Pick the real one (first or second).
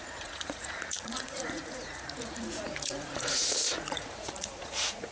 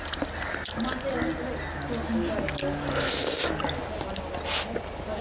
second